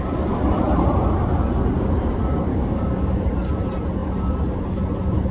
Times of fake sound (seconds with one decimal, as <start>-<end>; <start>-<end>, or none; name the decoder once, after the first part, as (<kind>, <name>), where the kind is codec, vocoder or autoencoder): 2.5-3.2 (codec, DAC)